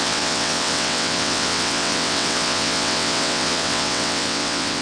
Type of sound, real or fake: fake